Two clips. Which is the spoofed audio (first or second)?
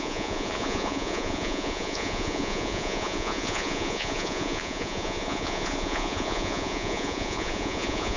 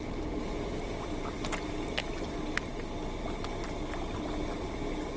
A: first